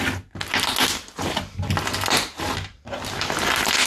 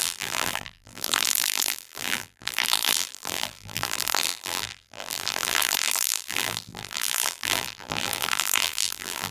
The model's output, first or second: second